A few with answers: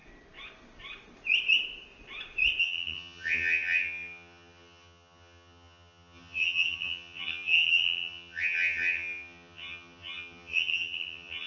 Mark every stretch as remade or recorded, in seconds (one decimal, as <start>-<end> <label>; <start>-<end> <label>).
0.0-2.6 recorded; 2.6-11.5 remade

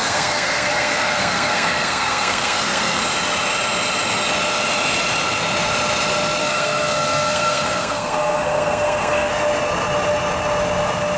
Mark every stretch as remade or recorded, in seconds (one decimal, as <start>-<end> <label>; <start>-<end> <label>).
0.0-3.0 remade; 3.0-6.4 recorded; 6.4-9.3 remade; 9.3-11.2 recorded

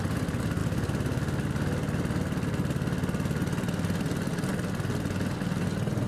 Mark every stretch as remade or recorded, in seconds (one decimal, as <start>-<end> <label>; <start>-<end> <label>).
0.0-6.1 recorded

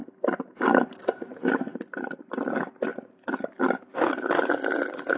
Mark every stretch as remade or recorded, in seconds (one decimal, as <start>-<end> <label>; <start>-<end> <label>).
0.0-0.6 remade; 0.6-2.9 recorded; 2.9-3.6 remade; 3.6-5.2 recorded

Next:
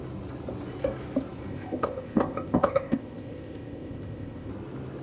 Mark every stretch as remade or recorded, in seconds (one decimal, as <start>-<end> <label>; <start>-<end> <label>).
0.0-1.5 recorded; 1.5-4.5 remade; 4.5-5.0 recorded

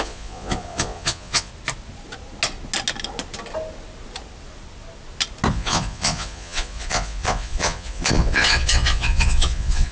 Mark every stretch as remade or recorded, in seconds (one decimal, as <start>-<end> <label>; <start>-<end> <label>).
0.0-1.5 remade; 1.5-5.5 recorded; 5.5-9.9 remade

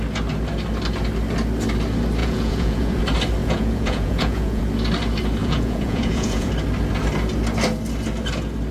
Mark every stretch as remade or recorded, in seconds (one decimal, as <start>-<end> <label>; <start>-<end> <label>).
0.0-2.2 recorded; 2.2-3.0 remade; 3.0-3.4 recorded; 3.4-4.6 remade; 4.6-5.4 recorded; 5.4-6.5 remade; 6.5-8.7 recorded